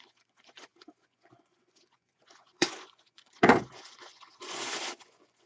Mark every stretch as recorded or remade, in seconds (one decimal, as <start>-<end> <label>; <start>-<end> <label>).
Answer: 0.0-5.5 remade